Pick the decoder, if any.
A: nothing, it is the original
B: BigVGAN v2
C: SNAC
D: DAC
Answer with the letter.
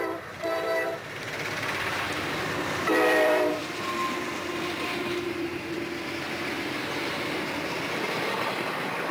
B